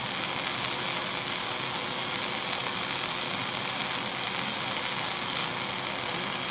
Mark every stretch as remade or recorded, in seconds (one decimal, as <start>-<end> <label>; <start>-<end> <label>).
0.0-6.5 recorded